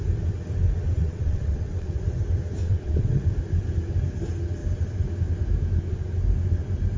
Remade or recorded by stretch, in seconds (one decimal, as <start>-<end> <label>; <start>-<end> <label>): 0.0-1.0 recorded; 1.0-2.0 remade; 2.0-2.6 recorded; 2.6-3.2 remade; 3.2-7.0 recorded